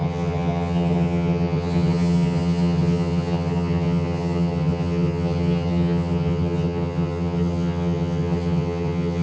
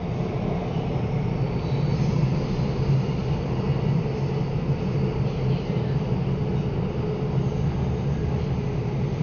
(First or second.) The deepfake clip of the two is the first